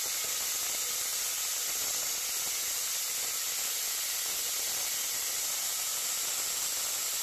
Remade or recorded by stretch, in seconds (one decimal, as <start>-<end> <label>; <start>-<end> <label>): 0.0-7.2 recorded

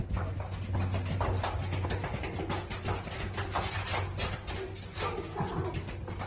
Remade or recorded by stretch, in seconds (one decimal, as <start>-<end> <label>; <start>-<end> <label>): 0.0-6.3 recorded

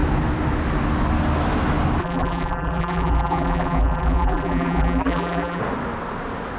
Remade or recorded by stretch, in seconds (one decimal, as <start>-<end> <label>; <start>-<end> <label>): 0.0-2.0 recorded; 2.0-5.6 remade; 5.6-6.6 recorded

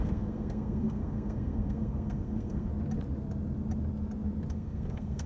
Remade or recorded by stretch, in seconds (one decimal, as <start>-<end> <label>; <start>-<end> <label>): 0.0-2.7 remade; 2.7-4.5 recorded; 4.5-5.3 remade

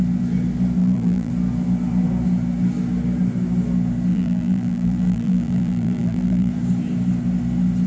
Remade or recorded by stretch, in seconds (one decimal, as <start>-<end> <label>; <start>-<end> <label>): 0.0-0.8 recorded; 0.8-1.3 remade; 1.3-4.1 recorded; 4.1-6.5 remade; 6.5-7.9 recorded

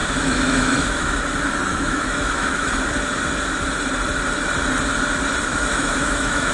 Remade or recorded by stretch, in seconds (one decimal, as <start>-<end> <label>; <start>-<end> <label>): 0.0-1.2 remade; 1.2-1.7 recorded; 1.7-2.7 remade; 2.7-5.5 recorded; 5.5-6.5 remade